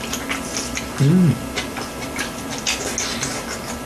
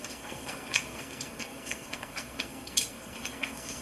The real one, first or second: first